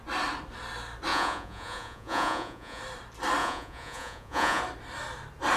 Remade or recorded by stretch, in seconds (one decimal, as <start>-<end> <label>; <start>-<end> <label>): 0.0-1.1 recorded; 1.1-2.8 remade; 2.8-3.4 recorded; 3.4-4.6 remade; 4.6-5.6 recorded